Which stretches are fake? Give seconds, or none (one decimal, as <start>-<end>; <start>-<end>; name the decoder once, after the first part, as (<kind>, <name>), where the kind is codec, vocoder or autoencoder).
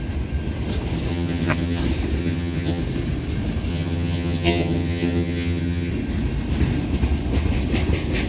1.1-1.8 (vocoder, HiFi-GAN); 2.2-2.8; 3.7-5.9